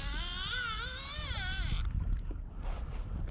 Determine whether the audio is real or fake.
real